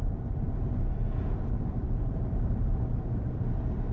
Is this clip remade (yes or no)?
yes